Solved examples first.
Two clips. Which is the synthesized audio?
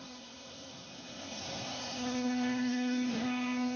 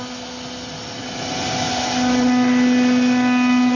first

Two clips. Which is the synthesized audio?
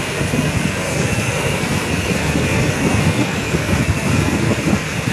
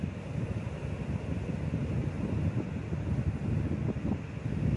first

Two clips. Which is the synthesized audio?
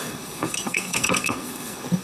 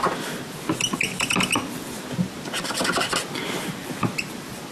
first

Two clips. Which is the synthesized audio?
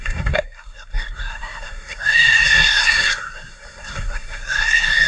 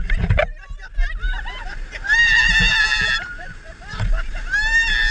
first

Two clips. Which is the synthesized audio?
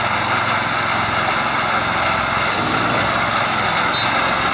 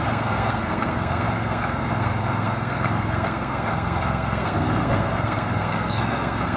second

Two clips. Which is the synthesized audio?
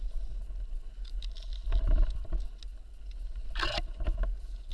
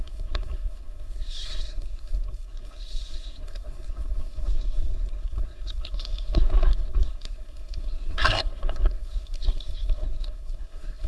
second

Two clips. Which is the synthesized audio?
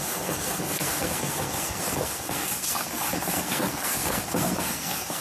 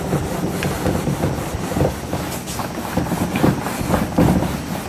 first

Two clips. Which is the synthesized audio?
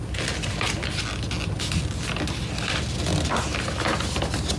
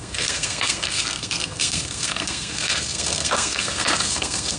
second